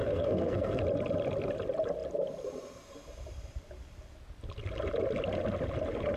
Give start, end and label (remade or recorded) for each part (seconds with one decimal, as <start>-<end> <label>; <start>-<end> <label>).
0.0-0.8 remade; 0.8-6.2 recorded